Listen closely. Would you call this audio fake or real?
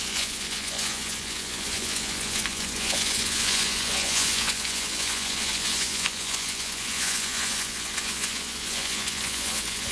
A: fake